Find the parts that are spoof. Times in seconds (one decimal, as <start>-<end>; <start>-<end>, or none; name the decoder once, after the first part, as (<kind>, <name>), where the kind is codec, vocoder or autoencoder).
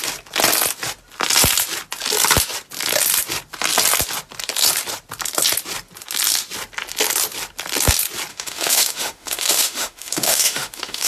8.3-11.1 (autoencoder, DAC-VAE)